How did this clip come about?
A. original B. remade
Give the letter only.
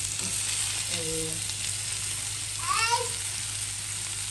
A